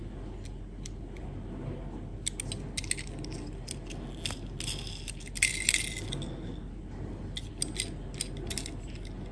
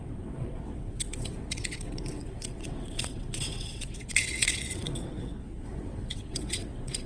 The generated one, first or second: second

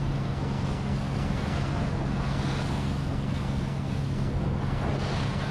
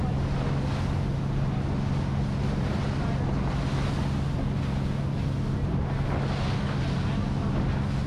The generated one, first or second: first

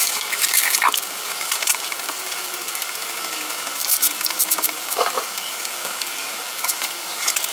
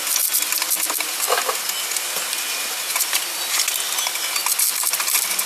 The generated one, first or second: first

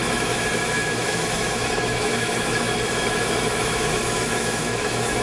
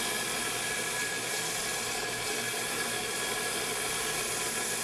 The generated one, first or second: first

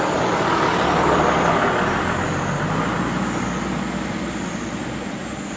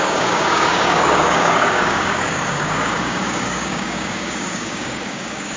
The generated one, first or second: second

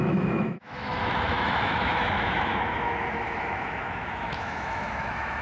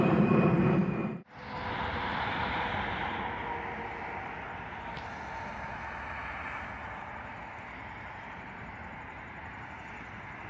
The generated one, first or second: first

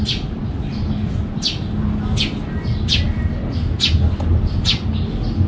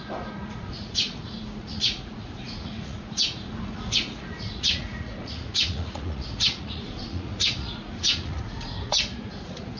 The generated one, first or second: second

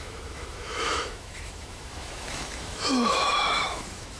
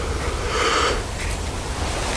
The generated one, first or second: first